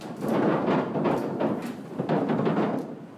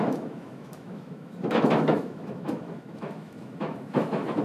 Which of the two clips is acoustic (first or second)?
first